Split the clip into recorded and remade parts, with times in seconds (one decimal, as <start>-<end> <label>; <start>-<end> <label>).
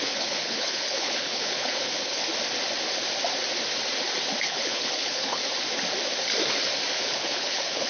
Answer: 0.0-2.2 remade; 2.2-4.4 recorded; 4.4-5.4 remade; 5.4-6.9 recorded; 6.9-7.9 remade